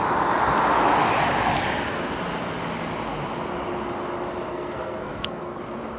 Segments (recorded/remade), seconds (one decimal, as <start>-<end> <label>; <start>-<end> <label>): 0.0-4.5 recorded; 4.5-5.6 remade; 5.6-6.0 recorded